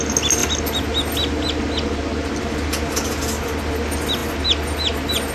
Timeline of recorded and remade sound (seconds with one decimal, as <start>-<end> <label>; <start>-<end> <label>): 0.0-5.3 recorded